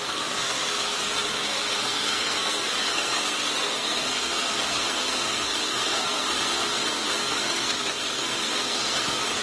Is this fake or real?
fake